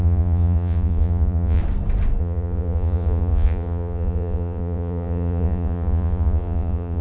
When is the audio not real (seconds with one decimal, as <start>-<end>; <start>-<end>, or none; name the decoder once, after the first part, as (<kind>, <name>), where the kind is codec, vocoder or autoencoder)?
0.0-1.6 (vocoder, Vocos); 2.2-7.0